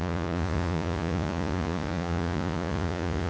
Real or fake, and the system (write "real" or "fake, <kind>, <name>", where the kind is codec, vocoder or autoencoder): fake, vocoder, Vocos